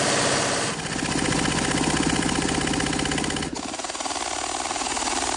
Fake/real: real